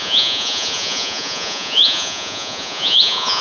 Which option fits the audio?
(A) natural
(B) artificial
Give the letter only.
B